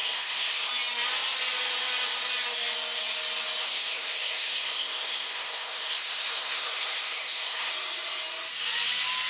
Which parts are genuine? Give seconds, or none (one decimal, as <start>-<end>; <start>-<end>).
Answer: 0.7-3.6; 7.7-9.3